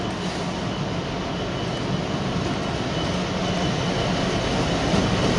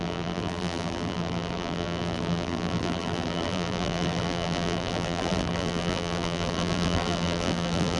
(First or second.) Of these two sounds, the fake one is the second